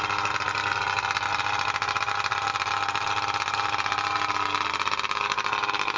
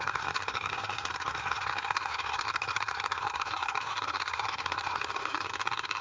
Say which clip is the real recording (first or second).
first